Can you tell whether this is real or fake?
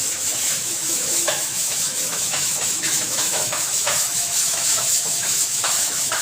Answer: fake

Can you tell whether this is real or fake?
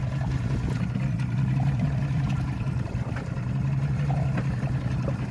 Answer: real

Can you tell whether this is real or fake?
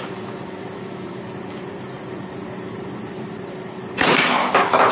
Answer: real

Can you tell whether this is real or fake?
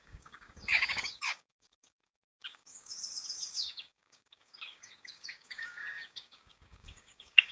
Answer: fake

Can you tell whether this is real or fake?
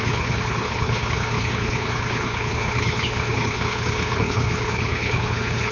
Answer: fake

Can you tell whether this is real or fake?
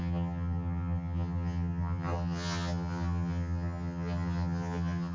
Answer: fake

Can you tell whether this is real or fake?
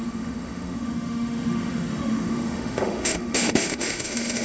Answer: fake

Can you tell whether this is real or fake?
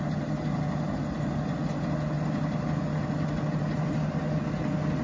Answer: real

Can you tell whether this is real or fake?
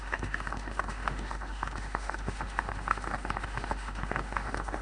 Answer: fake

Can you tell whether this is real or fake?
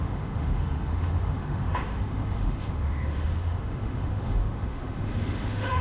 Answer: fake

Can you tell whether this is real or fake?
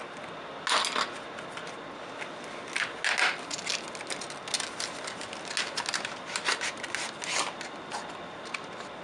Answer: real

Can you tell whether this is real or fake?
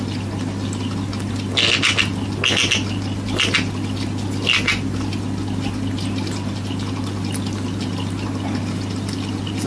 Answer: real